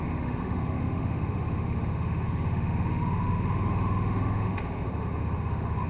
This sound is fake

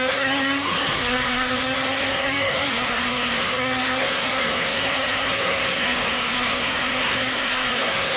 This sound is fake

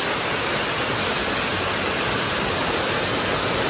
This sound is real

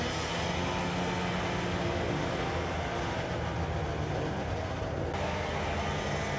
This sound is real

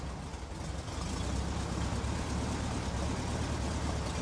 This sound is real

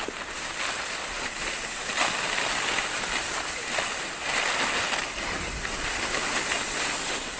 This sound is real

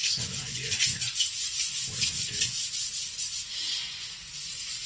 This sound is fake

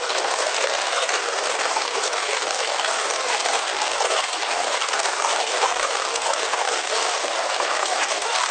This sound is fake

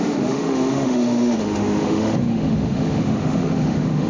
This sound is fake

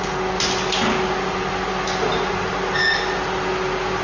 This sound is real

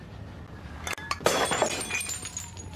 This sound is real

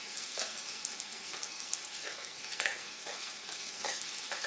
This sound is fake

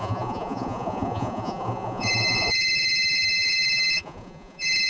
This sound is fake